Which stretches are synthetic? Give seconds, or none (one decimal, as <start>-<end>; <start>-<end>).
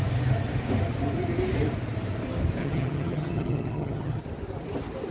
2.6-4.2